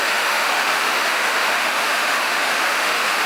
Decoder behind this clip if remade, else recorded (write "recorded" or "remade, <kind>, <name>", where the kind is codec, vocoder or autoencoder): remade, autoencoder, DAC-VAE